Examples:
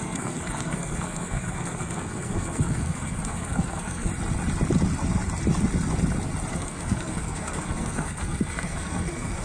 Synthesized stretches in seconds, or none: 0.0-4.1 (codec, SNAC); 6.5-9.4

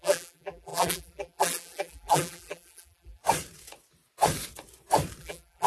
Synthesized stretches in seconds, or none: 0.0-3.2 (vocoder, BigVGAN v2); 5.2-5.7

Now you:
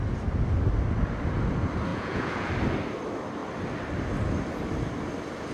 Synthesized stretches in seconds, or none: 1.9-2.5 (vocoder, Vocos)